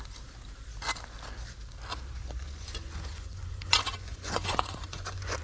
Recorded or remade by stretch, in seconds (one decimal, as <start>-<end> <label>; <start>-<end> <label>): 0.0-2.2 recorded; 2.2-5.4 remade